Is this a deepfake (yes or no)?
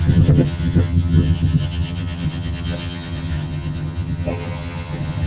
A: yes